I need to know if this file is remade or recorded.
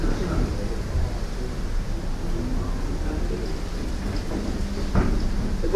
recorded